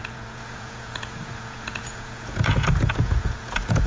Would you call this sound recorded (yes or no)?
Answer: no